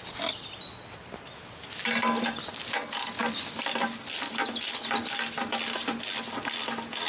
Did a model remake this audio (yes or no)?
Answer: no